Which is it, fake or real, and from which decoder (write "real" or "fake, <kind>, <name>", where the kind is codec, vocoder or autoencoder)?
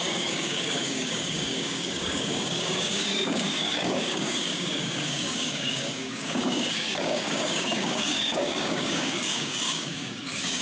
fake, codec, DAC